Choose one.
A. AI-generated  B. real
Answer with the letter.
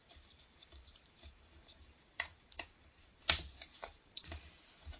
A